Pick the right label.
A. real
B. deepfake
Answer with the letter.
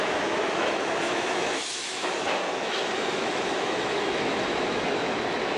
B